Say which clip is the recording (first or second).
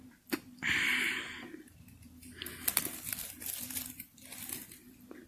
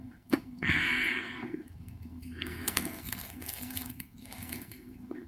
first